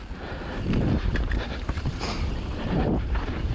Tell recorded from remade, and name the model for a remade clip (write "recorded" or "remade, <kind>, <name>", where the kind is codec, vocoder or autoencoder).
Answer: remade, vocoder, BigVGAN v2